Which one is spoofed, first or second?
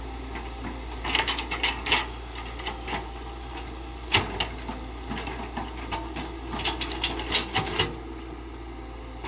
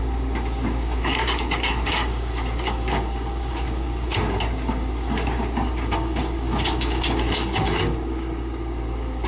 second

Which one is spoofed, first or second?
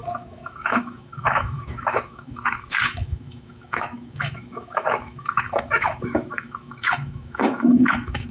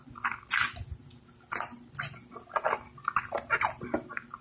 first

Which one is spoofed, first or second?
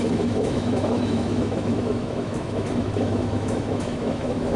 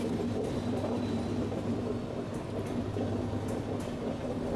first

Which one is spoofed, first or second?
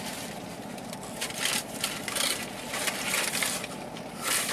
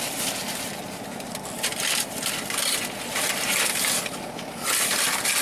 first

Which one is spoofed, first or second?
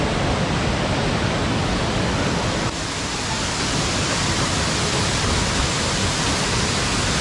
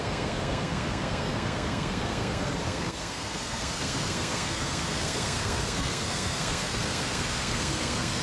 second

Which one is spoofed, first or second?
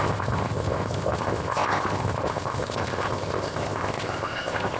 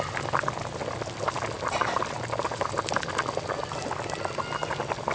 first